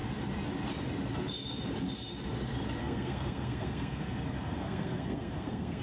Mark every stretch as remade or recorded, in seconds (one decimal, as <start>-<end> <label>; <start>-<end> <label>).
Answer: 0.0-2.8 recorded; 2.8-5.8 remade